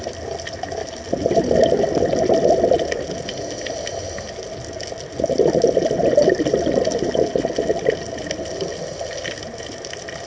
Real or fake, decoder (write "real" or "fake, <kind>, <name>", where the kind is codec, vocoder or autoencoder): real